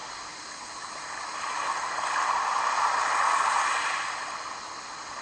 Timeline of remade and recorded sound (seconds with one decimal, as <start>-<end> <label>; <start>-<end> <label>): 0.0-5.2 recorded